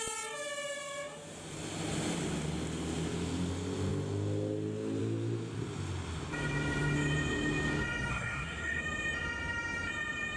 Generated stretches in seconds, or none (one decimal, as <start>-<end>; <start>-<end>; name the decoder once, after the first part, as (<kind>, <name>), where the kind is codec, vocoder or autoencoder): 8.1-8.8 (codec, SNAC)